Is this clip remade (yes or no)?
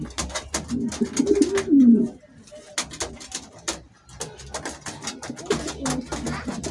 no